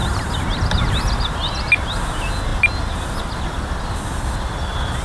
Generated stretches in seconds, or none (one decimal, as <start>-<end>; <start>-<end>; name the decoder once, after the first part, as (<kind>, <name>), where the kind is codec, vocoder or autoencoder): none